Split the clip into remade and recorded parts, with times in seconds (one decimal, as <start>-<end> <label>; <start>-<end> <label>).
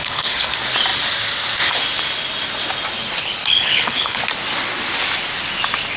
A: 0.0-0.5 remade; 0.5-3.4 recorded; 3.4-4.2 remade; 4.2-6.0 recorded